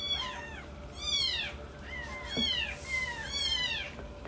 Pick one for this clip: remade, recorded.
recorded